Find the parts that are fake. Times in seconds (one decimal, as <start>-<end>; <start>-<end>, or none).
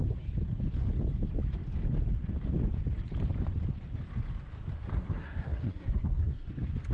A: 4.9-6.5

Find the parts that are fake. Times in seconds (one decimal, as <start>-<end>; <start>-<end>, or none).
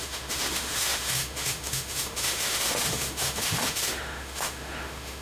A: 0.0-5.2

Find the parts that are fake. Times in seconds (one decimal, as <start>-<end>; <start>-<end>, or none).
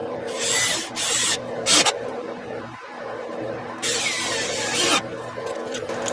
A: 0.0-5.1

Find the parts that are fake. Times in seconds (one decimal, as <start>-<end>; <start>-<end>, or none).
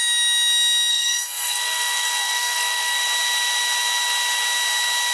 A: 0.9-3.0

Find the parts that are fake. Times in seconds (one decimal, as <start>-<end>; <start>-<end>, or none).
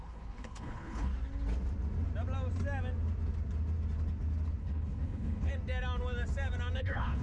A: 0.0-1.1; 4.6-5.5; 6.8-7.2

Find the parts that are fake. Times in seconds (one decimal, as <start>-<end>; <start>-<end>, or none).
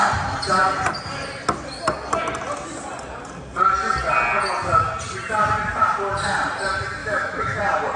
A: 7.0-7.6